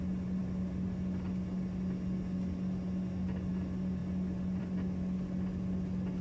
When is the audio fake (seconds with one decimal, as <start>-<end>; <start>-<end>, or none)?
none